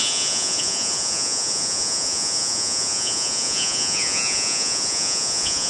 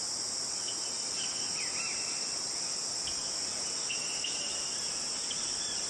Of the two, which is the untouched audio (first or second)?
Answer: second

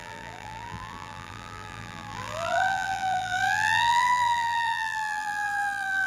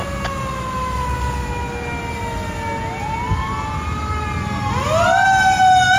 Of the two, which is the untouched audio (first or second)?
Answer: second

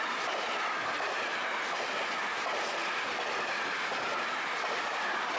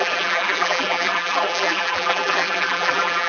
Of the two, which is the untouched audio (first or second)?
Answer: first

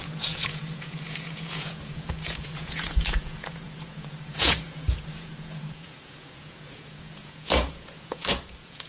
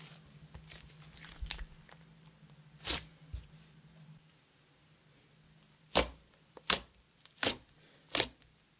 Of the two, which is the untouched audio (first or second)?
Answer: second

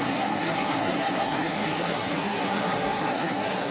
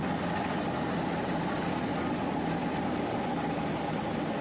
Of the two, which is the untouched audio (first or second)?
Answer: second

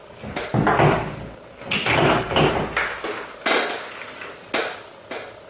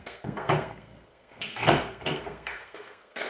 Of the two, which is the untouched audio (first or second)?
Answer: first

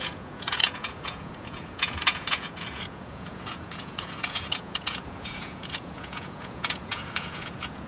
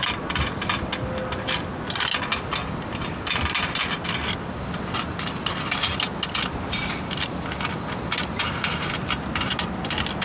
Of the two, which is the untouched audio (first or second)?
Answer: second